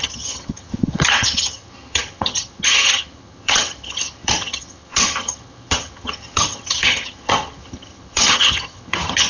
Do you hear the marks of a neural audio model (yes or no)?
yes